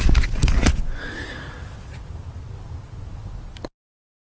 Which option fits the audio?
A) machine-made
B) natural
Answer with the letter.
B